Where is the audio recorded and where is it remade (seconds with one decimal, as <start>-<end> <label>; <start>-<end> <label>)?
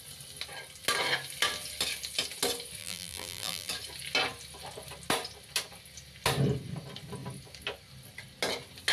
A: 0.0-2.8 recorded; 2.8-3.7 remade; 3.7-8.9 recorded